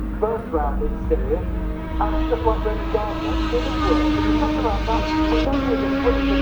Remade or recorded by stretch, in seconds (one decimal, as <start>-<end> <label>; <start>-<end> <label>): 0.0-6.4 recorded